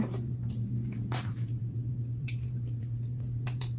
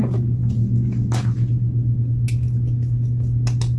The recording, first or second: second